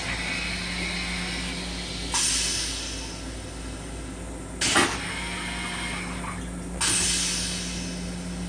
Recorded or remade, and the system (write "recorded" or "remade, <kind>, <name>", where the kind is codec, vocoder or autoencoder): recorded